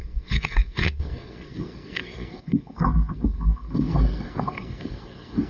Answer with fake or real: fake